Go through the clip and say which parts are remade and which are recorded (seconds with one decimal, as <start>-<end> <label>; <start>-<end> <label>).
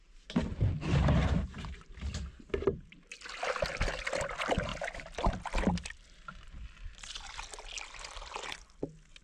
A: 0.0-9.2 recorded